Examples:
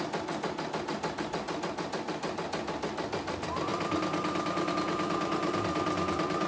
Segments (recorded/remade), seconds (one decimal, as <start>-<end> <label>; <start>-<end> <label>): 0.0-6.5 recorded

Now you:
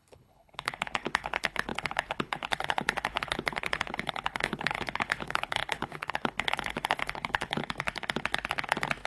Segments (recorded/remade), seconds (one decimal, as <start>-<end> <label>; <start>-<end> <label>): 0.0-7.6 remade; 7.6-9.1 recorded

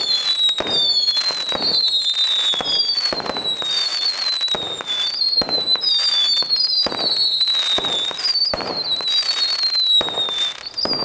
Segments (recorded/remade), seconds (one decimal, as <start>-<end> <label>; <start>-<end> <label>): 0.0-11.0 recorded

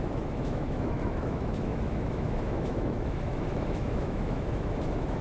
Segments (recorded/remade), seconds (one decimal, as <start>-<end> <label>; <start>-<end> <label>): 0.0-5.2 remade